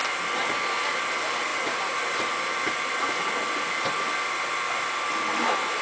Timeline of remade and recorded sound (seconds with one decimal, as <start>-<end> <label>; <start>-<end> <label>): 0.0-5.8 recorded